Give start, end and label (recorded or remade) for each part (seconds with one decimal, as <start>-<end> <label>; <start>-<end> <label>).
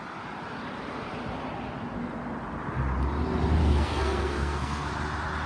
0.0-3.6 recorded; 3.6-4.9 remade; 4.9-5.5 recorded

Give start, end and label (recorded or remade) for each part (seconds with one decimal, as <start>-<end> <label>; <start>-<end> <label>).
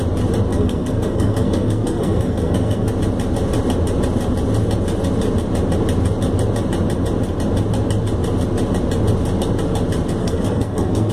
0.0-0.5 recorded; 0.5-2.9 remade; 2.9-10.2 recorded; 10.2-11.1 remade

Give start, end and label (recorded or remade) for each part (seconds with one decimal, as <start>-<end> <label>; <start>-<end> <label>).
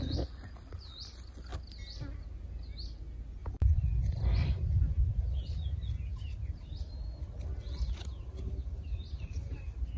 0.0-3.4 recorded; 3.4-5.0 remade; 5.0-6.1 recorded; 6.1-6.7 remade; 6.7-10.0 recorded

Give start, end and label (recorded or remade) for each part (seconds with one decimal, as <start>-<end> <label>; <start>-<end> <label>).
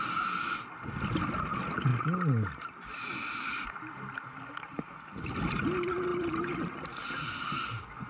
0.0-8.1 recorded